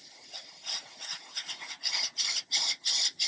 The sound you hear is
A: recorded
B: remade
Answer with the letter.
A